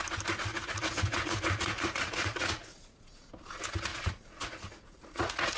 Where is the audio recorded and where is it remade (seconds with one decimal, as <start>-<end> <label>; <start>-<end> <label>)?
0.0-0.5 recorded; 0.5-3.3 remade; 3.3-3.9 recorded; 3.9-5.6 remade